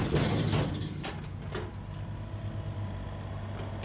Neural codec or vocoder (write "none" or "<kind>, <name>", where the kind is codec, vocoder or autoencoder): none